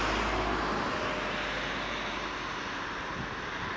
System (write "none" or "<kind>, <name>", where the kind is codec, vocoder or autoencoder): none